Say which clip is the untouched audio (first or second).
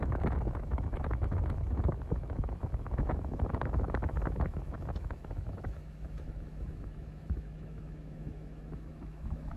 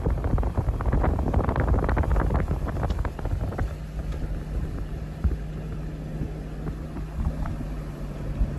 second